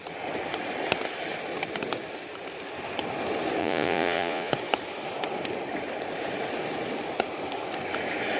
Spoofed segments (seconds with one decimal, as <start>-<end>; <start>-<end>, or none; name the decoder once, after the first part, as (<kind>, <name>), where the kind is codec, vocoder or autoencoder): 3.6-4.5 (vocoder, Vocos)